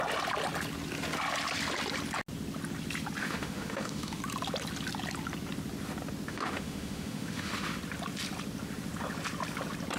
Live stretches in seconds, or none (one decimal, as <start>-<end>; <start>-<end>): 0.0-3.2; 4.2-6.3; 7.8-10.0